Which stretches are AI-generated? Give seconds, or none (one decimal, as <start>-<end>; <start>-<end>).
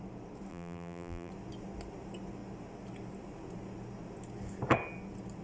0.5-1.3